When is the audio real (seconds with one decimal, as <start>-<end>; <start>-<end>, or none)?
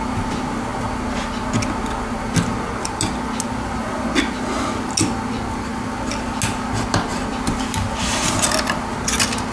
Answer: 0.0-9.5